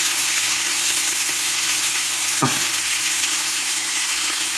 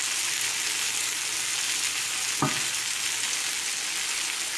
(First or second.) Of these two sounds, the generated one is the first